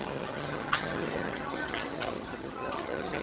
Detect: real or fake fake